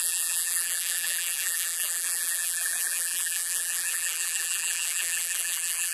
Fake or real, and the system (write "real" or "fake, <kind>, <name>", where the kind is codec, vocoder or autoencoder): fake, vocoder, BigVGAN v2